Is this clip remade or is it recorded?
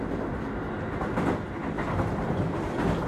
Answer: recorded